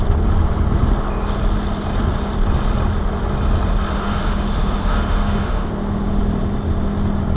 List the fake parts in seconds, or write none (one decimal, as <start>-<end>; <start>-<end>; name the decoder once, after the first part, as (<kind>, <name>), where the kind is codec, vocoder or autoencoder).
3.9-5.7 (autoencoder, DAC-VAE)